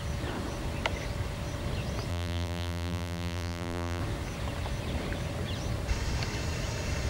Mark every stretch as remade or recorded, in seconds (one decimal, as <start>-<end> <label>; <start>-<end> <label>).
0.0-2.1 recorded; 2.1-4.0 remade; 4.0-7.1 recorded